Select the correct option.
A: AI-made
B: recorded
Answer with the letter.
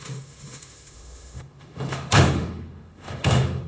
A